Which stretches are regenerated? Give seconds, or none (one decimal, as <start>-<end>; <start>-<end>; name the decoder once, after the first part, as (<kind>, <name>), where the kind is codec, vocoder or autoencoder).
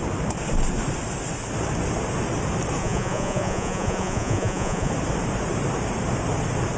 2.8-4.9 (vocoder, Vocos)